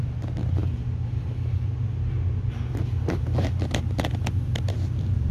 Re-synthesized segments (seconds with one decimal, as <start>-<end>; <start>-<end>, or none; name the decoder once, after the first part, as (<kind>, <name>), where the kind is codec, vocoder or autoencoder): none